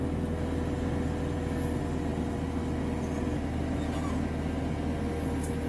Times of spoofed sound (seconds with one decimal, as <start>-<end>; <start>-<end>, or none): none